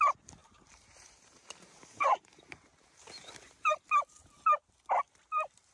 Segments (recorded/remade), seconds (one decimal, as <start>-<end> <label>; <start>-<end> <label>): 0.0-0.4 recorded; 0.4-3.8 remade; 3.8-5.7 recorded